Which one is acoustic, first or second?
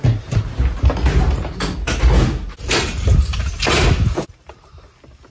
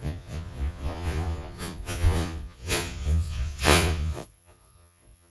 first